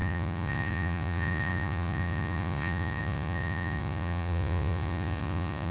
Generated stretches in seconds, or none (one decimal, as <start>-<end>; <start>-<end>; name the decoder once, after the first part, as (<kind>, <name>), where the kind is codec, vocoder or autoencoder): 0.0-5.7 (vocoder, Vocos)